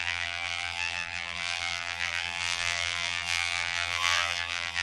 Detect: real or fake fake